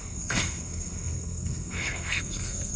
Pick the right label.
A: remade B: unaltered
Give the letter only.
A